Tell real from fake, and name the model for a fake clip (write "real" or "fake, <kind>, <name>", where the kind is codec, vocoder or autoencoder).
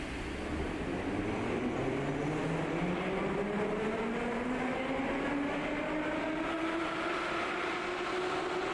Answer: real